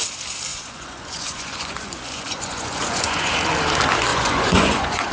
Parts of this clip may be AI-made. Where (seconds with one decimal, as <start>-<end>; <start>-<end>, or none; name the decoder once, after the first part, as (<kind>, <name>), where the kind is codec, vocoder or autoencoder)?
0.5-3.3 (vocoder, Vocos); 4.1-5.1